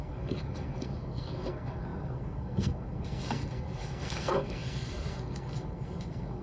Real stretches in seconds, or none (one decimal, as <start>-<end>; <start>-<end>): none